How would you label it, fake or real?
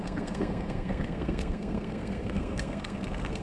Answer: fake